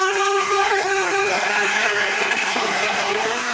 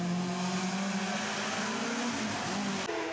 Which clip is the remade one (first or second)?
first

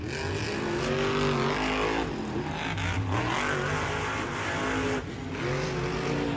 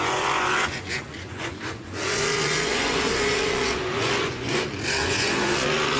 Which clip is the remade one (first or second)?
second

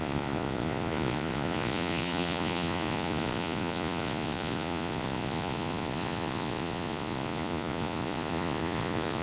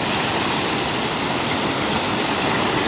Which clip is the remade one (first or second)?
first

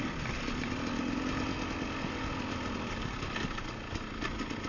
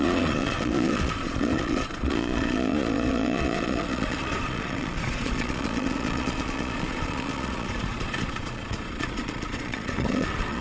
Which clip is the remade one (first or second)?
second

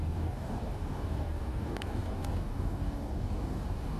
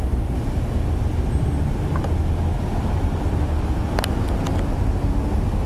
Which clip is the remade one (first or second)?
first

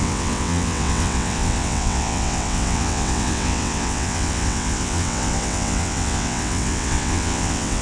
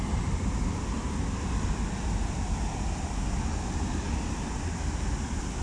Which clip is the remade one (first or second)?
first